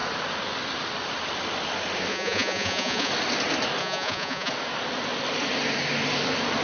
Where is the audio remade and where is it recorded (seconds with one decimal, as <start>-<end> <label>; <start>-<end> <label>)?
0.0-2.1 recorded; 2.1-3.1 remade; 3.1-3.8 recorded; 3.8-4.5 remade; 4.5-6.6 recorded